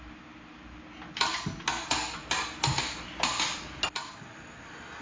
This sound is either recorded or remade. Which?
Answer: recorded